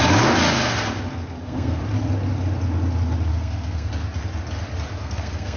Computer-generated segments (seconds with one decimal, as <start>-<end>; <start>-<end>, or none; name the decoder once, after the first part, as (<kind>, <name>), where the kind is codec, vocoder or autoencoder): 1.1-1.8 (codec, SNAC); 3.3-3.9; 5.0-5.6